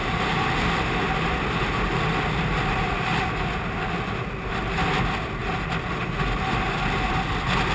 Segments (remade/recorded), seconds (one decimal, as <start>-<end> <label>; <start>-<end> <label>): 0.0-7.7 recorded

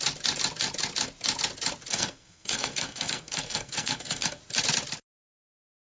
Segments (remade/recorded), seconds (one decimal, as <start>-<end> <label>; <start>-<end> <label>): 0.0-1.9 recorded; 1.9-4.4 remade; 4.4-5.9 recorded

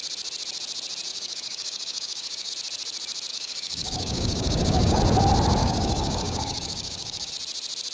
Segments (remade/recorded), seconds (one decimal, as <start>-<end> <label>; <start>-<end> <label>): 0.0-1.1 recorded; 1.1-2.5 remade; 2.5-3.3 recorded; 3.3-5.0 remade; 5.0-5.6 recorded; 5.6-7.3 remade; 7.3-7.9 recorded